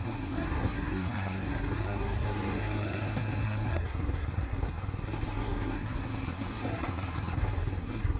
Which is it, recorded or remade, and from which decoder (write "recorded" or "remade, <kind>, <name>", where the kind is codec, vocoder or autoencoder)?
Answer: remade, codec, SNAC